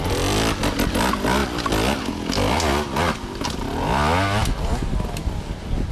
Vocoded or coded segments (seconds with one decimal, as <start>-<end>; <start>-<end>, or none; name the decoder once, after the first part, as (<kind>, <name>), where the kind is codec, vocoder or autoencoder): none

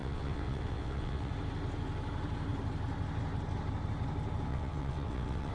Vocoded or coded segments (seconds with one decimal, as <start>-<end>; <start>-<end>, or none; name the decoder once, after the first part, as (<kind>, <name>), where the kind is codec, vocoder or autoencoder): 0.0-1.3 (vocoder, WaveNeXt); 4.5-5.5

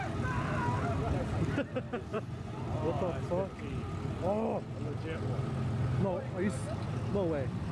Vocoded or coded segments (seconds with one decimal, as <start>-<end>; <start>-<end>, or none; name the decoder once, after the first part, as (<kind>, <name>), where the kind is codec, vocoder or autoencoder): 2.1-2.6 (vocoder, Vocos)

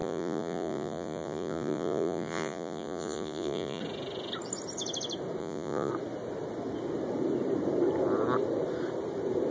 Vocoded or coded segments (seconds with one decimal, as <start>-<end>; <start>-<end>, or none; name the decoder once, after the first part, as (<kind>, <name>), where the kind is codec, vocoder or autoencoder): 0.0-3.8 (vocoder, Vocos); 5.4-5.9

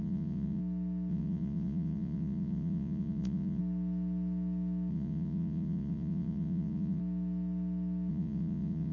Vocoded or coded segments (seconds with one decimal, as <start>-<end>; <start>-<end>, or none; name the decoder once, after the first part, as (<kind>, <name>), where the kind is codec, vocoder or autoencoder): 0.0-0.6 (vocoder, Vocos); 1.1-3.6; 4.9-7.0; 8.1-8.9